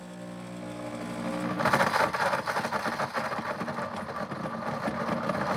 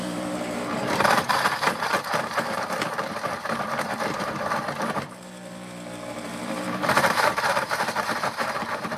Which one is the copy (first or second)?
second